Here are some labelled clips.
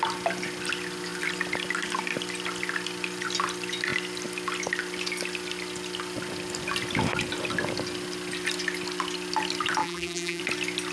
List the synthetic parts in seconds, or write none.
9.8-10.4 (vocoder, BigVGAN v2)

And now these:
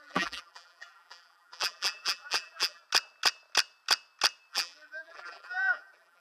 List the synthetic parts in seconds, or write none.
0.0-2.8 (vocoder, BigVGAN v2); 4.5-6.2

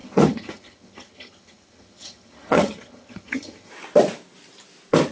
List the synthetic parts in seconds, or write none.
0.0-3.7 (vocoder, HiFi-GAN)